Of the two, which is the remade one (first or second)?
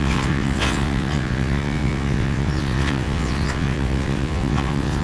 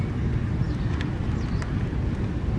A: first